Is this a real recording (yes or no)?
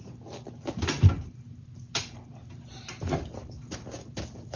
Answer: yes